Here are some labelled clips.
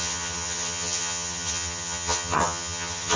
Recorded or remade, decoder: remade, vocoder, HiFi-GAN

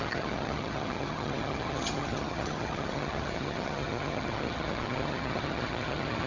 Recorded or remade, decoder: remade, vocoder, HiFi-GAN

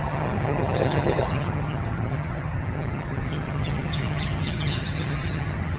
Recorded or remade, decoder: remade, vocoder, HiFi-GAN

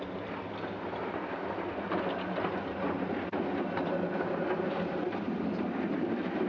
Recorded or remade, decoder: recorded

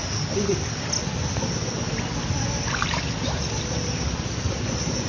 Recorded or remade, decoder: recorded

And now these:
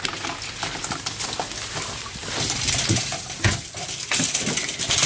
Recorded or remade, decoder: recorded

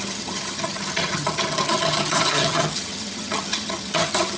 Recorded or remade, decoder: remade, vocoder, HiFi-GAN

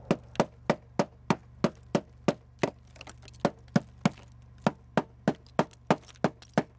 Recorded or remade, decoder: recorded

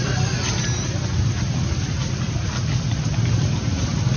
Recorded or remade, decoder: recorded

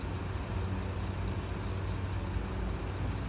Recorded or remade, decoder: recorded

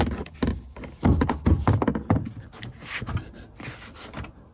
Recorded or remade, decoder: recorded